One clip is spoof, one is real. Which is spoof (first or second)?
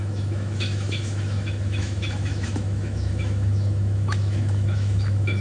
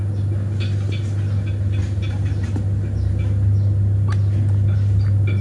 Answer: first